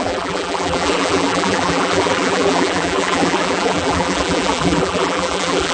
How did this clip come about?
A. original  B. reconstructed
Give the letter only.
B